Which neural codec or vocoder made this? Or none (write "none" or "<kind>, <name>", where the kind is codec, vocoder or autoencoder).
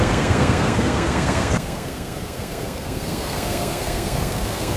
codec, SNAC